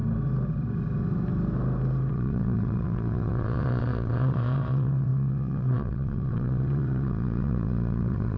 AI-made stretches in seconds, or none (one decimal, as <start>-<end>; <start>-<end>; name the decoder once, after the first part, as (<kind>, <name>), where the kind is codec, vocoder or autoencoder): 2.1-8.4 (vocoder, WaveNeXt)